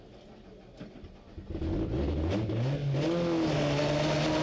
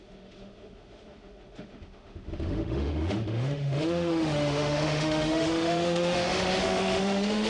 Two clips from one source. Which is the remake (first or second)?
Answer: second